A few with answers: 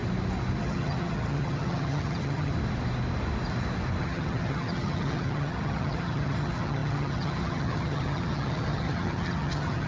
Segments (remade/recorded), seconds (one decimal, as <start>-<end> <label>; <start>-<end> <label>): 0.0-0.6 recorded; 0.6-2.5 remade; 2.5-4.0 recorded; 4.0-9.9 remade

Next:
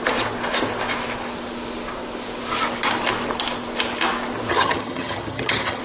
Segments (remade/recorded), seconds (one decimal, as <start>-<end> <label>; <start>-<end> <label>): 0.0-4.5 recorded; 4.5-5.8 remade

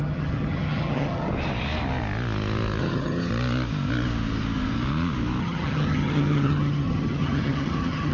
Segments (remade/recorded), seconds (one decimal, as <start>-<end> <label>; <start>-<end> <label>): 0.0-1.3 remade; 1.3-2.8 recorded; 2.8-3.3 remade; 3.3-5.4 recorded; 5.4-8.1 remade

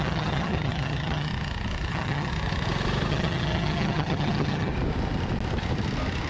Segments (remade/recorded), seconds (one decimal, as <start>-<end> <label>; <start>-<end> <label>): 0.0-1.3 remade; 1.3-1.9 recorded; 1.9-2.3 remade; 2.3-3.1 recorded; 3.1-4.7 remade; 4.7-6.3 recorded

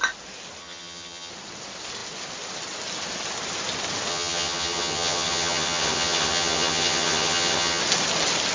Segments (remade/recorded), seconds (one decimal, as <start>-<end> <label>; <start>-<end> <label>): 0.0-0.6 recorded; 0.6-1.3 remade; 1.3-4.1 recorded; 4.1-7.8 remade; 7.8-8.5 recorded

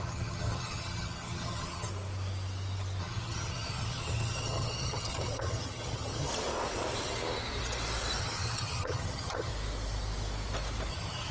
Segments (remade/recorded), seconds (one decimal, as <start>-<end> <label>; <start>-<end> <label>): 0.0-1.9 remade; 1.9-3.0 recorded; 3.0-6.3 remade; 6.3-8.2 recorded; 8.2-9.5 remade; 9.5-10.9 recorded; 10.9-11.3 remade

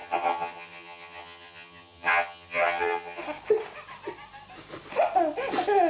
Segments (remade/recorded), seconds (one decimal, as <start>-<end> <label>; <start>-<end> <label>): 0.0-3.2 remade; 3.2-5.9 recorded

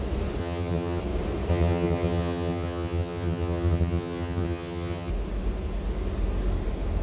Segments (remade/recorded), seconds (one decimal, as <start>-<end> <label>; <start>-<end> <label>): 0.0-0.4 recorded; 0.4-1.0 remade; 1.0-1.5 recorded; 1.5-5.1 remade; 5.1-7.0 recorded